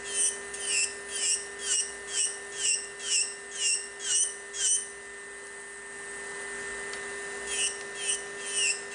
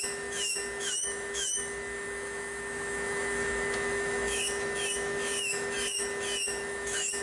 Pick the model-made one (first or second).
second